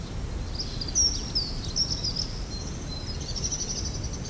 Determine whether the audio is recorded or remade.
recorded